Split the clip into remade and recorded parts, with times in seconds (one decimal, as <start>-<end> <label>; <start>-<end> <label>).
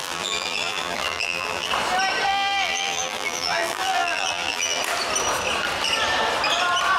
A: 0.0-1.7 remade; 1.7-2.3 recorded; 2.3-4.8 remade; 4.8-7.0 recorded